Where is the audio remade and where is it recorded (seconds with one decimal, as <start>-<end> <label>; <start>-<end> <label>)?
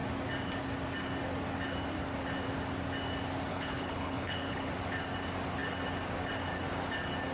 0.0-3.5 recorded; 3.5-4.7 remade; 4.7-7.3 recorded